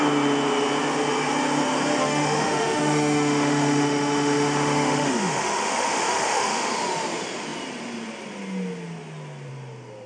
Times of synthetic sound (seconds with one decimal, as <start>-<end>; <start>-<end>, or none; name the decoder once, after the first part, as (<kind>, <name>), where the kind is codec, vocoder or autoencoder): 2.0-6.7 (autoencoder, DAC-VAE)